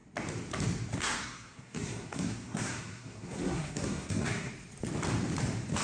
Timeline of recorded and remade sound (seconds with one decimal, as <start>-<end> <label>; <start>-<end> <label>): 0.0-1.0 recorded; 1.0-4.5 remade; 4.5-5.8 recorded